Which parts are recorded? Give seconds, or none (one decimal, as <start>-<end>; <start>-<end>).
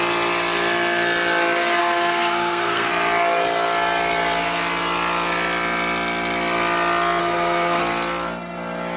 0.0-1.8; 2.9-7.2; 7.8-9.0